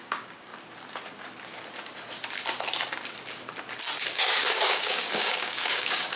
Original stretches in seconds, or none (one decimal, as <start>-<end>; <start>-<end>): 0.5-4.0